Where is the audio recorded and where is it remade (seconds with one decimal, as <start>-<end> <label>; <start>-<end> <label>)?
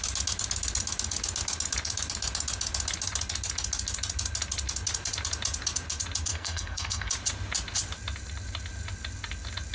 0.0-6.3 recorded; 6.3-7.1 remade; 7.1-9.7 recorded